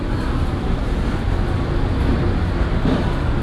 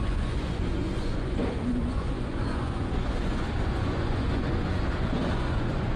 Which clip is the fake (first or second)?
second